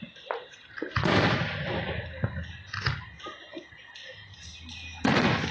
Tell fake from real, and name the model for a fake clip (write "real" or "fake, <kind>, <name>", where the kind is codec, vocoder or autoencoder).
real